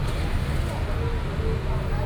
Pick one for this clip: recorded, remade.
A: recorded